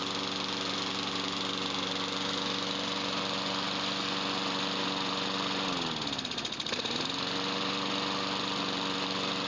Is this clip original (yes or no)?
yes